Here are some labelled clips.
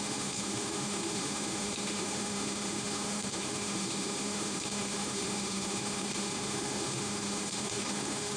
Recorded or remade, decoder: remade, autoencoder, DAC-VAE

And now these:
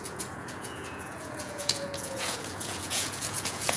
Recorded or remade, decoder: remade, vocoder, Vocos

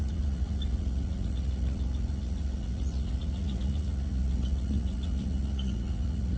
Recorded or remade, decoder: remade, vocoder, Vocos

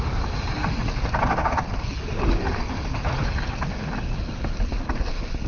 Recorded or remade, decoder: recorded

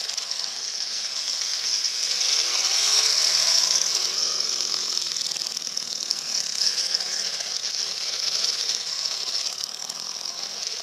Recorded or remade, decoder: remade, codec, SNAC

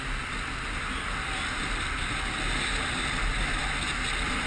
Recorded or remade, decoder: recorded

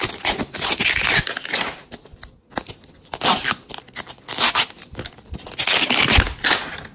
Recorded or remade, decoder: recorded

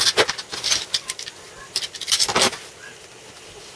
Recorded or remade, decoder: recorded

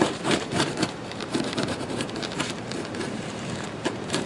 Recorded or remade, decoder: remade, vocoder, BigVGAN v2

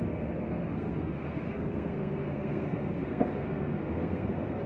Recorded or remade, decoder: remade, codec, SNAC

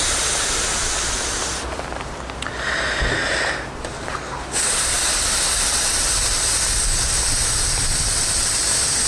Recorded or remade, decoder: recorded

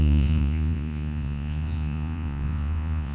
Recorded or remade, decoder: remade, vocoder, Vocos